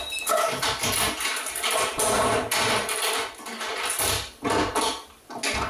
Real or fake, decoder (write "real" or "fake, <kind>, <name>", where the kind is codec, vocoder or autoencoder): real